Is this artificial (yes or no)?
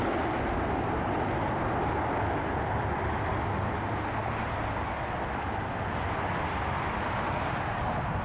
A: no